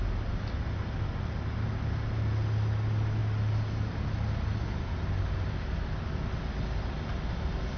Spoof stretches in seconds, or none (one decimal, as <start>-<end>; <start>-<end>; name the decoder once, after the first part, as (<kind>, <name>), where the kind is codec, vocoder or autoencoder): none